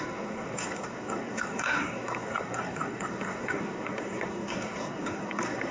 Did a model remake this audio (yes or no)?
yes